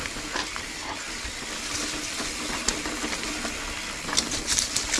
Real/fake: real